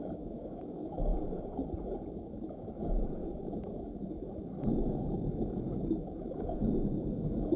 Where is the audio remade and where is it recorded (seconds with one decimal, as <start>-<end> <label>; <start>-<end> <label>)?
0.0-1.1 remade; 1.1-2.1 recorded; 2.1-7.6 remade

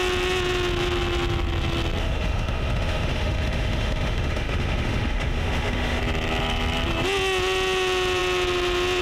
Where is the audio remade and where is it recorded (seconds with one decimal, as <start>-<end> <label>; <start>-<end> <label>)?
0.0-2.0 recorded; 2.0-6.0 remade; 6.0-9.0 recorded

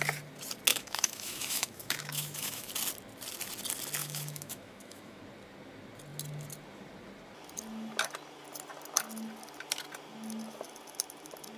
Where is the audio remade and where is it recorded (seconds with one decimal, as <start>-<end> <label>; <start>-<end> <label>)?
0.0-0.7 recorded; 0.7-2.7 remade; 2.7-4.0 recorded; 4.0-5.2 remade; 5.2-11.6 recorded

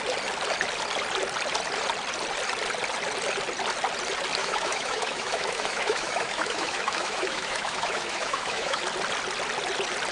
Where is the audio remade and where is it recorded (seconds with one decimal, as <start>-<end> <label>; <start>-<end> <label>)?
0.0-4.4 recorded; 4.4-8.8 remade; 8.8-10.1 recorded

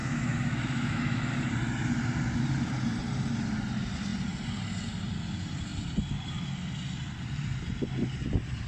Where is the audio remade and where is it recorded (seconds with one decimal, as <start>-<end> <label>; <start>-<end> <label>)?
0.0-1.3 remade; 1.3-8.7 recorded